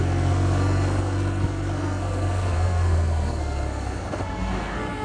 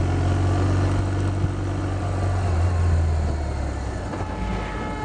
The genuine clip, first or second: second